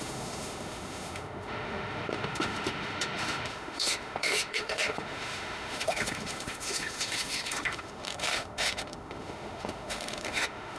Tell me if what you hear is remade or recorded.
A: remade